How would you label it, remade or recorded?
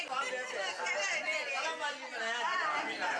recorded